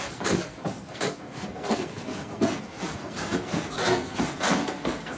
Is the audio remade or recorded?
remade